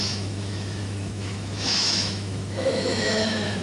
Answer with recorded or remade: remade